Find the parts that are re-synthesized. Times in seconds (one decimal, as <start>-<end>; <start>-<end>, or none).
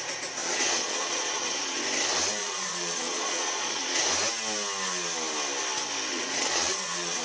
0.4-1.8; 2.4-4.0; 6.1-7.2